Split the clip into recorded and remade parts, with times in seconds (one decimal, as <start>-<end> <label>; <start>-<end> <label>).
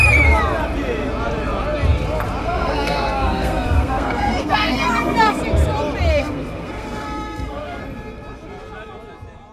0.0-2.4 recorded; 2.4-5.4 remade; 5.4-6.1 recorded; 6.1-7.8 remade; 7.8-9.5 recorded